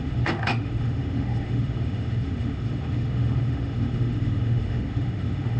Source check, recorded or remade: remade